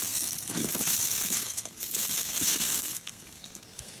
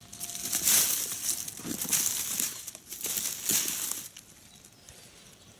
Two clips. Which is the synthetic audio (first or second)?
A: first